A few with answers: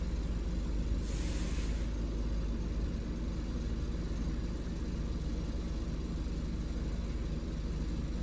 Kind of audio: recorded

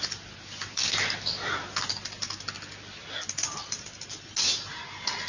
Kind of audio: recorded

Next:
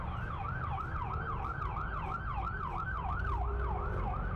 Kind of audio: recorded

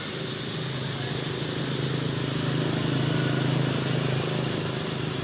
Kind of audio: recorded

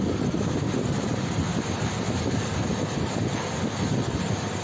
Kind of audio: recorded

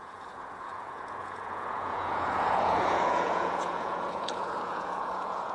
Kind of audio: remade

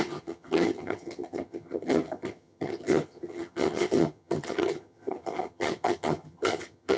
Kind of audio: remade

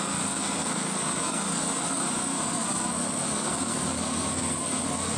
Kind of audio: remade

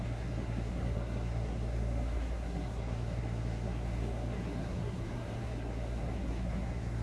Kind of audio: remade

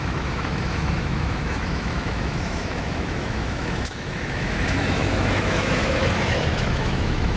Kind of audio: remade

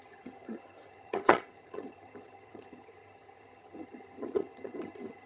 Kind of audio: remade